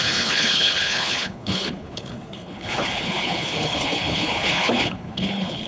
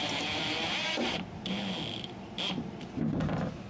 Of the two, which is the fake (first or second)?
first